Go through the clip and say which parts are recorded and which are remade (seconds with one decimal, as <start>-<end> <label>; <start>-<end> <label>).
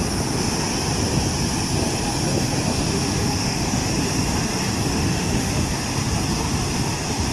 0.0-2.7 recorded; 2.7-3.9 remade; 3.9-4.9 recorded; 4.9-5.5 remade; 5.5-7.3 recorded